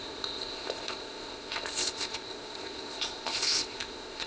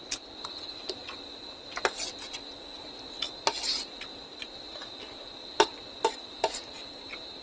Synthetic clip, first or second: first